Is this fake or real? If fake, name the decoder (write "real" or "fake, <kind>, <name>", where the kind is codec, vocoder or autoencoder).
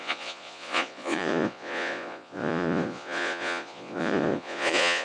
fake, vocoder, Vocos